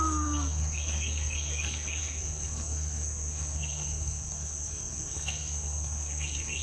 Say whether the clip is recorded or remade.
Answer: remade